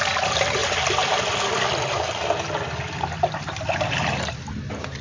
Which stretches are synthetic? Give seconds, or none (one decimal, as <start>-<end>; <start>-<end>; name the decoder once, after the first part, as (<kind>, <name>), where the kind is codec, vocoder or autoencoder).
none